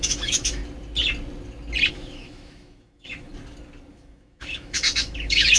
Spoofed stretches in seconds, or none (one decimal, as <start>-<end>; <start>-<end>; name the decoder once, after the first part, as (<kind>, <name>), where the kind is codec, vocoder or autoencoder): 0.0-0.6 (autoencoder, DAC-VAE); 1.9-3.3; 3.9-5.6